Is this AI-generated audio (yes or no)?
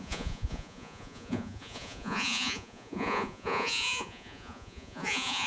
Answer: yes